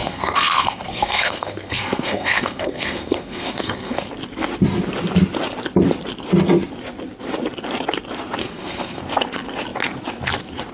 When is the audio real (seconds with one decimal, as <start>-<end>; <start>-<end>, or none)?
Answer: 4.1-8.4; 9.0-10.7